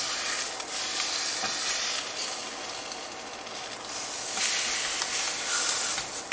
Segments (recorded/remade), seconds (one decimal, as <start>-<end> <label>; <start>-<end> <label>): 0.0-6.3 recorded